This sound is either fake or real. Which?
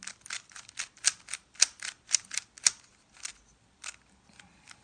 real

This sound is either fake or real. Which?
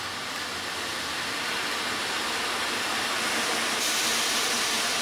real